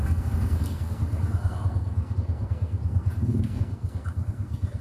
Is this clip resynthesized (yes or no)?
yes